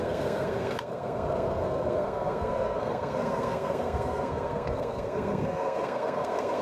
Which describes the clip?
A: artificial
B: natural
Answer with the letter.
A